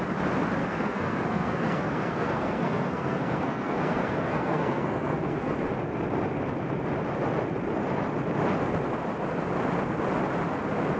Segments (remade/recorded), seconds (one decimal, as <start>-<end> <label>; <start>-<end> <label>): 0.0-0.6 recorded; 0.6-5.7 remade; 5.7-11.0 recorded